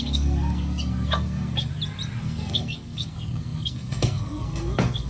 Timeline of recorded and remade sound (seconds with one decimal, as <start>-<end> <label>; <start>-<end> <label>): 0.0-1.7 remade; 1.7-2.2 recorded; 2.2-5.1 remade